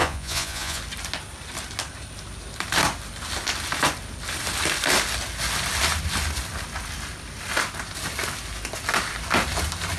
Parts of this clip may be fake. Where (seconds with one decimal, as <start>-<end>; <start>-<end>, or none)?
0.0-0.8